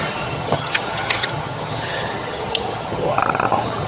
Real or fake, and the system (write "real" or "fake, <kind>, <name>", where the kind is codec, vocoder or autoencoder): fake, vocoder, HiFi-GAN